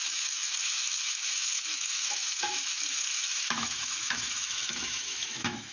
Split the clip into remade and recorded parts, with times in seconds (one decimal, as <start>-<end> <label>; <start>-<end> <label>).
0.0-5.7 remade